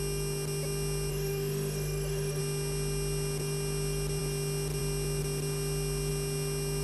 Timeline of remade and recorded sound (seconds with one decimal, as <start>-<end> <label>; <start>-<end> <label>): 0.0-1.1 recorded; 1.1-2.4 remade; 2.4-6.8 recorded

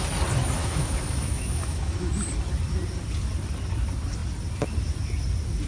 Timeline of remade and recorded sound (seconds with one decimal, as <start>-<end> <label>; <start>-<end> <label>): 0.0-0.6 recorded; 0.6-2.1 remade; 2.1-5.7 recorded